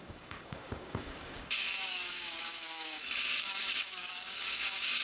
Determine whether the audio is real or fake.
fake